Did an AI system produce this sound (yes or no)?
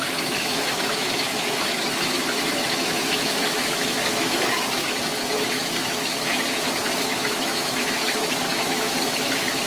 yes